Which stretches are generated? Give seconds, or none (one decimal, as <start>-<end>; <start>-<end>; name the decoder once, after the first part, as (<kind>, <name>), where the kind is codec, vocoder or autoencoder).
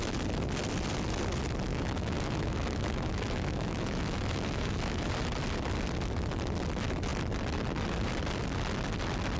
1.7-5.1 (autoencoder, DAC-VAE)